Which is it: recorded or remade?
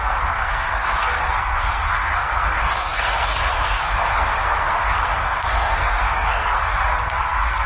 remade